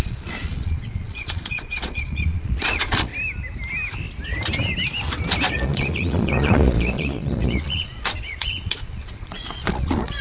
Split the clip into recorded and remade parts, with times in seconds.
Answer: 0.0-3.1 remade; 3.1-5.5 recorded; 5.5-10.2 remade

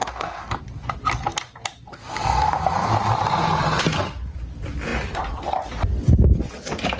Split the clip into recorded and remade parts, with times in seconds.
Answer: 0.0-0.6 remade; 0.6-1.9 recorded; 1.9-2.9 remade; 2.9-7.0 recorded

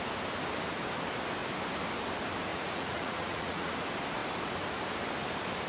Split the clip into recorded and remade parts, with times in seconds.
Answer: 0.0-2.5 recorded; 2.5-3.7 remade; 3.7-5.7 recorded

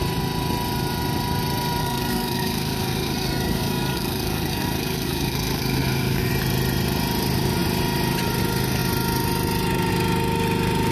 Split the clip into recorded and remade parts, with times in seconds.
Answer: 0.0-1.8 recorded; 1.8-6.3 remade; 6.3-10.9 recorded

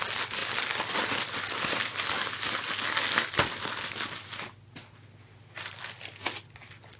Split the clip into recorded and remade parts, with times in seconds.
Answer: 0.0-0.4 recorded; 0.4-2.6 remade; 2.6-3.2 recorded; 3.2-4.1 remade; 4.1-7.0 recorded

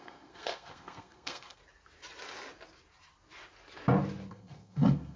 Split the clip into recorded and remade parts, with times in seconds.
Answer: 0.0-1.6 remade; 1.6-4.3 recorded; 4.3-5.2 remade

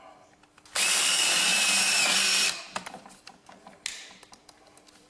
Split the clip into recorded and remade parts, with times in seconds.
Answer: 0.0-5.1 recorded